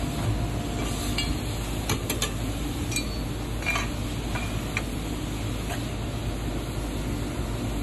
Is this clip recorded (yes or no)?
yes